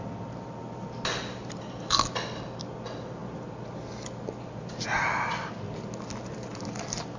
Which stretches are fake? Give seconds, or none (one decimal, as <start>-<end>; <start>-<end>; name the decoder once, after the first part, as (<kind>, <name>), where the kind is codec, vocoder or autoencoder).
none